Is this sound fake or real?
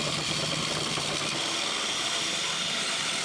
real